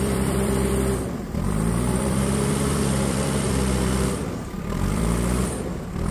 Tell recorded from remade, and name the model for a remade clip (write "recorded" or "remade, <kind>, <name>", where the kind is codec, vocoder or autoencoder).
remade, vocoder, BigVGAN v2